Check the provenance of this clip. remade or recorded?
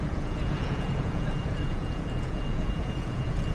remade